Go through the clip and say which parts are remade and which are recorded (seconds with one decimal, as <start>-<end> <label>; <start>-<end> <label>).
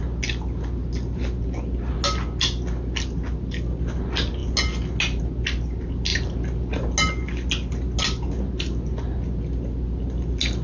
0.0-10.6 recorded